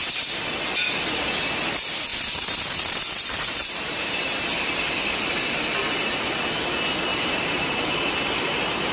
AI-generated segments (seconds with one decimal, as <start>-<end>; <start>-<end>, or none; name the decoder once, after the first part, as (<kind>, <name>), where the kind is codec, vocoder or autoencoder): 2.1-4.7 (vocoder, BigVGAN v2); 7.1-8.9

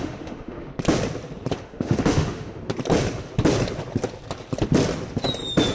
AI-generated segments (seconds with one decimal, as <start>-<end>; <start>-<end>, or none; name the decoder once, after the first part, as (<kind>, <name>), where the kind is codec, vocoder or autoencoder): 0.0-0.7 (autoencoder, DAC-VAE); 1.6-2.6

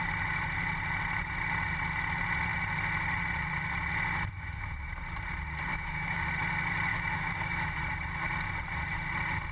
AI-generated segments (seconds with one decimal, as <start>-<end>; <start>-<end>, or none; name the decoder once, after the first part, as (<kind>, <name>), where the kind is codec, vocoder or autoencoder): 4.3-4.9 (autoencoder, DAC-VAE); 5.7-6.2; 6.9-7.8

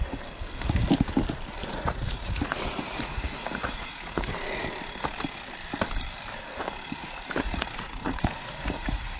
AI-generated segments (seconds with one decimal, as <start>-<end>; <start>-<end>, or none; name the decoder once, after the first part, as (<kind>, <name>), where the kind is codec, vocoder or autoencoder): 1.6-4.3 (vocoder, Vocos); 7.0-9.2

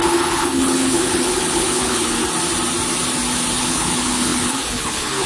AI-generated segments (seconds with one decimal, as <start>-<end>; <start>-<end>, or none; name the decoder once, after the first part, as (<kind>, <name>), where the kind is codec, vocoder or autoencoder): 0.0-2.2 (codec, HILCodec); 3.6-5.3

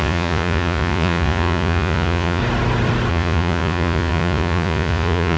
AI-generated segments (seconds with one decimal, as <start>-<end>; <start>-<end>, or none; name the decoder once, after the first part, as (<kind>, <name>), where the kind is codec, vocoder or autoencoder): 0.0-2.4 (vocoder, Vocos); 3.1-5.4

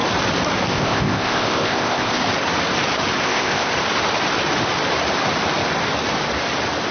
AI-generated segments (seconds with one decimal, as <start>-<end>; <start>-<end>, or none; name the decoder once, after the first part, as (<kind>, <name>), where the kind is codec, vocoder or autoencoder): 0.7-2.2 (codec, ZipCodec); 3.2-3.7

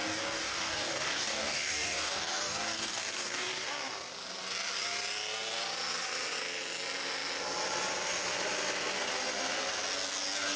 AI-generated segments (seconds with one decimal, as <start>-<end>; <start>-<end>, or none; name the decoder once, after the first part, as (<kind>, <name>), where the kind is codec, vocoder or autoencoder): 0.0-3.7 (codec, DAC)